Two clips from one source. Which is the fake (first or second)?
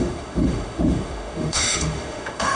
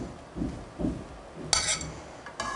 first